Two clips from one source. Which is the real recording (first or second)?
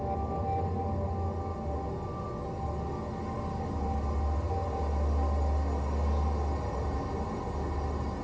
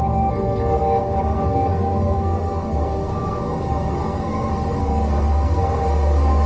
first